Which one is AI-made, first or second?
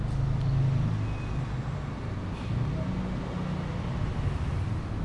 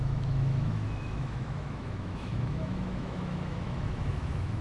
second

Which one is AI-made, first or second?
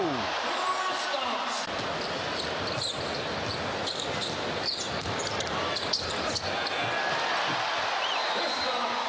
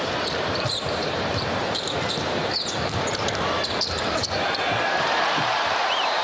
second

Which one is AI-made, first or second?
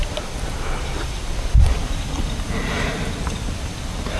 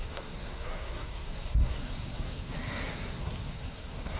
second